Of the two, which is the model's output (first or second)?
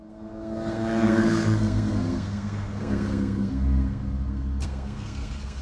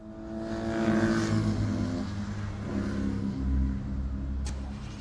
first